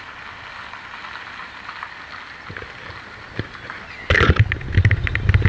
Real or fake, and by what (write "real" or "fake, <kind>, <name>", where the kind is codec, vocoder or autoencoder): real